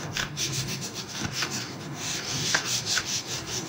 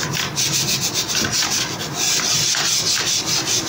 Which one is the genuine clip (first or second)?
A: second